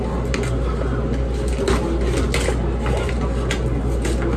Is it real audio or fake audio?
real